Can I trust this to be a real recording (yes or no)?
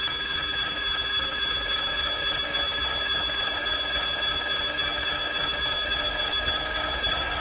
no